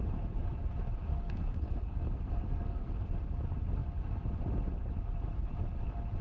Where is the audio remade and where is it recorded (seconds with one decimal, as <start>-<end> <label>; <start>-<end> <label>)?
0.0-1.1 recorded; 1.1-3.1 remade; 3.1-6.2 recorded